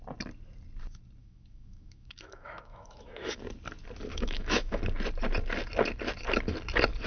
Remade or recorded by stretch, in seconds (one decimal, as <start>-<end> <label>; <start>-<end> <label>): 0.0-1.2 recorded; 1.2-3.4 remade; 3.4-4.1 recorded; 4.1-4.8 remade; 4.8-7.1 recorded